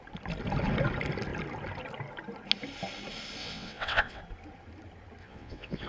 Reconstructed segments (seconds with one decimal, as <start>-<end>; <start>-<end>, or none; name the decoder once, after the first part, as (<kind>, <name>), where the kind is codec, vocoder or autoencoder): 3.4-4.2 (vocoder, WaveNeXt); 5.2-5.9